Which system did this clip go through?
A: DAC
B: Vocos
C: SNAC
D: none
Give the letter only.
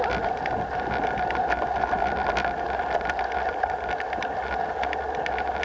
D